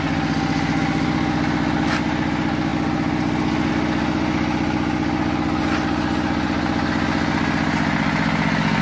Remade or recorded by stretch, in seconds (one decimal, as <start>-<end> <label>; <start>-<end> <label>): 0.0-8.8 recorded